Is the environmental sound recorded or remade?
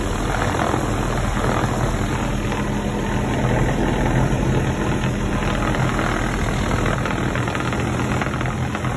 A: recorded